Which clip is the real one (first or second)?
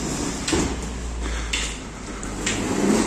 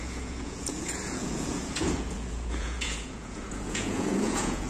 first